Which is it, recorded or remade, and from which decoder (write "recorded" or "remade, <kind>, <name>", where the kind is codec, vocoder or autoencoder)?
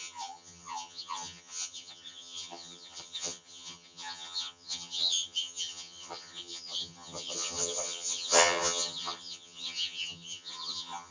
remade, vocoder, HiFi-GAN